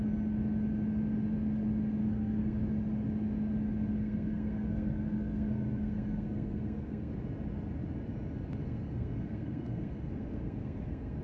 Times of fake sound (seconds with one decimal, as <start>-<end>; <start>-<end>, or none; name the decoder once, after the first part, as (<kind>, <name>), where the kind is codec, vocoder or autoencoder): 2.0-2.7 (codec, SNAC); 3.9-7.1; 8.6-11.2